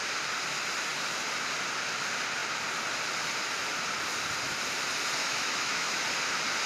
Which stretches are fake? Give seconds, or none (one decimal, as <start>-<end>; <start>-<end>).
5.2-6.0